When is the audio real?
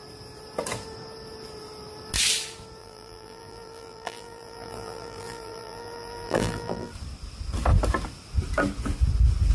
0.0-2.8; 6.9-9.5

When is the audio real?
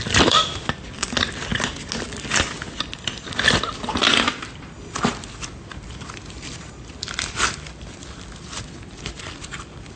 1.5-4.9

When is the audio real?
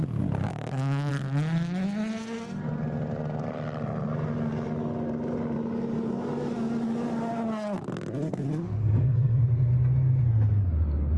0.0-0.5; 1.1-8.8; 9.4-11.2